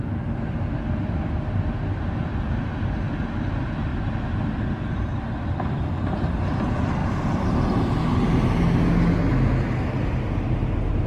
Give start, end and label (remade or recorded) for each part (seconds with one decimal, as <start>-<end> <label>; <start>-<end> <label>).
0.0-3.9 recorded; 3.9-5.5 remade; 5.5-7.0 recorded; 7.0-8.1 remade; 8.1-11.1 recorded